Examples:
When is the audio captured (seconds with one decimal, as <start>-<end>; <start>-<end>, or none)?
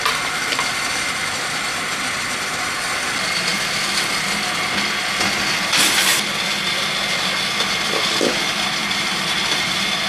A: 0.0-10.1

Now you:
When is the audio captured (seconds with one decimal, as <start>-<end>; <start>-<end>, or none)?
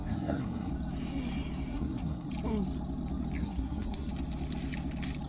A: 0.7-1.7; 2.3-3.4; 4.1-5.3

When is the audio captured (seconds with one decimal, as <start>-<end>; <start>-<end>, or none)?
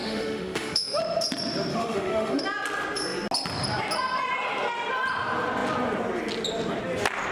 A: 1.0-1.7; 2.4-7.3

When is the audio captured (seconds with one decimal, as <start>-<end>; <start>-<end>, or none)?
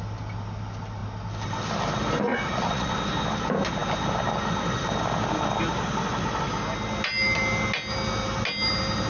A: 0.0-2.3; 2.9-9.1